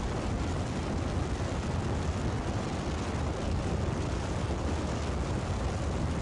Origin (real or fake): real